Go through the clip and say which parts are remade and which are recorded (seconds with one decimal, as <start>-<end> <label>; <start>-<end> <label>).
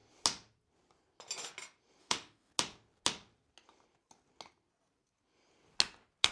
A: 0.0-2.0 recorded; 2.0-2.5 remade; 2.5-6.3 recorded